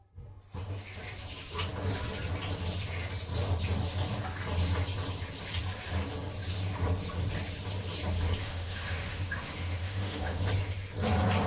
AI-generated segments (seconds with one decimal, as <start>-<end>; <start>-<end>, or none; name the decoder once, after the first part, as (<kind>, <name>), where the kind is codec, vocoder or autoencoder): 8.4-10.4 (autoencoder, DAC-VAE)